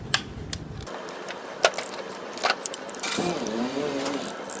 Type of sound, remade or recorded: remade